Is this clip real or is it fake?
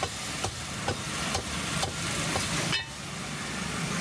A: real